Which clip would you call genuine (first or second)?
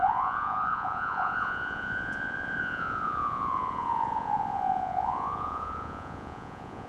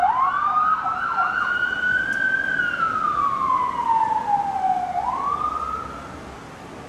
second